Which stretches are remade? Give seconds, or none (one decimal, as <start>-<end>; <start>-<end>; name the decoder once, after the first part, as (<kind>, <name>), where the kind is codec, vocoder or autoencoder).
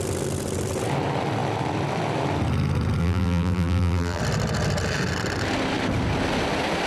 3.0-4.2 (vocoder, BigVGAN v2)